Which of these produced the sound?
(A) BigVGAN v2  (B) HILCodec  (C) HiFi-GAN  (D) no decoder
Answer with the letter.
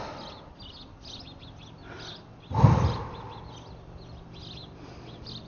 D